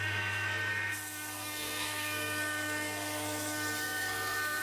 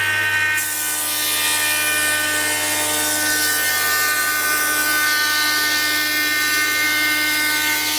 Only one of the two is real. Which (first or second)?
second